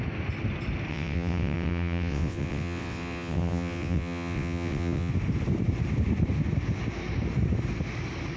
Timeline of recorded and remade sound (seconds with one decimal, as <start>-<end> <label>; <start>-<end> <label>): 0.0-0.9 recorded; 0.9-5.1 remade; 5.1-8.4 recorded